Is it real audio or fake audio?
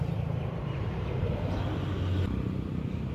fake